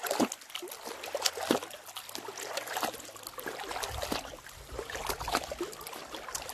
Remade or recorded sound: recorded